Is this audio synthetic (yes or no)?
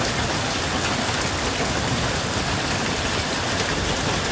no